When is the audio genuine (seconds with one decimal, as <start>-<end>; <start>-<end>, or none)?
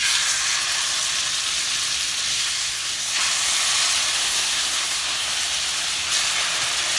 0.0-2.3; 3.2-4.2; 5.3-7.0